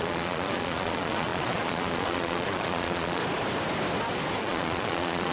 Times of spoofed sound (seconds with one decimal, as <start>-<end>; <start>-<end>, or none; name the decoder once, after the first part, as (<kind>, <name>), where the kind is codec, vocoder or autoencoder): 0.0-3.2 (vocoder, Vocos); 4.4-5.3